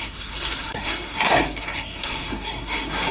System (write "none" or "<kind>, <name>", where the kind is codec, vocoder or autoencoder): codec, SNAC